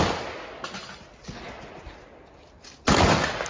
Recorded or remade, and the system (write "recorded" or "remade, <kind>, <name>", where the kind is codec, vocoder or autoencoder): recorded